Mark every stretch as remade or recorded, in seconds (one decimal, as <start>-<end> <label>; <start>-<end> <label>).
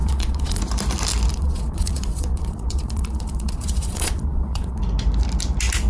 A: 0.0-0.6 remade; 0.6-1.3 recorded; 1.3-4.8 remade; 4.8-5.9 recorded